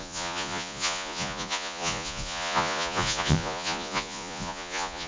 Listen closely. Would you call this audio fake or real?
fake